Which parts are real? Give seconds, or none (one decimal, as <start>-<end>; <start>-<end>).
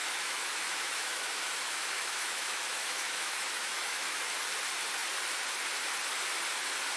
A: 4.2-7.0